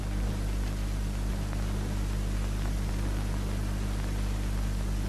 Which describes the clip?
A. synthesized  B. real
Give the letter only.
B